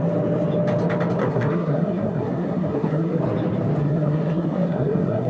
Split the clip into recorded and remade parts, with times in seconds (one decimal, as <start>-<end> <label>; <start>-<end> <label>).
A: 0.0-1.2 recorded; 1.2-3.2 remade; 3.2-3.8 recorded; 3.8-5.3 remade